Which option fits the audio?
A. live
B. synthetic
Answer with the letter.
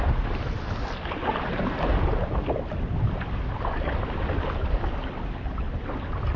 A